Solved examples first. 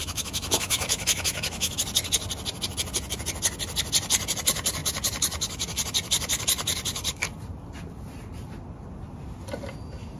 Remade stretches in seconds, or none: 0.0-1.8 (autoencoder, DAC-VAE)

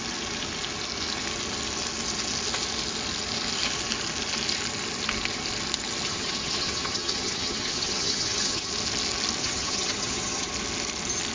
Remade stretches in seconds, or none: 6.1-8.7 (vocoder, HiFi-GAN); 9.4-10.5

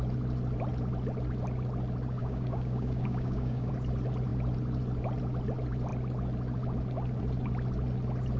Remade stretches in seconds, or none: 2.2-3.7 (codec, DAC)

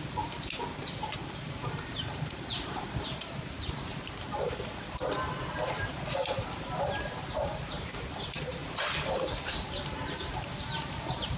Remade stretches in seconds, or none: 0.0-11.4 (vocoder, BigVGAN v2)